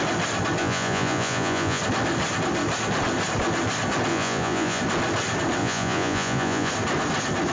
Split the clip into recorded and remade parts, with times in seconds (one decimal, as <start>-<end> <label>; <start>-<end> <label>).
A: 0.0-0.6 recorded; 0.6-1.8 remade; 1.8-4.1 recorded; 4.1-4.8 remade; 4.8-5.6 recorded; 5.6-6.7 remade; 6.7-7.5 recorded